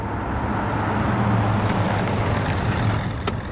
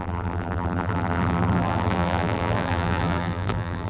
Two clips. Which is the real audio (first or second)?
first